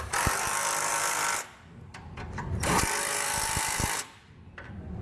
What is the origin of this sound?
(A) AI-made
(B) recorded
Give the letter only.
A